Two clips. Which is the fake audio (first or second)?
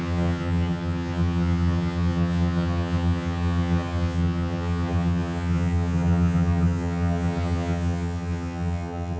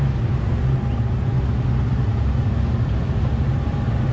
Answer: first